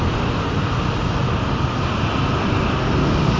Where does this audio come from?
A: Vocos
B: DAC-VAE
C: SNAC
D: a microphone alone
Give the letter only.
D